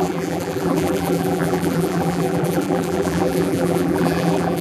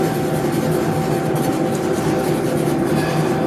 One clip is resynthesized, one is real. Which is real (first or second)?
second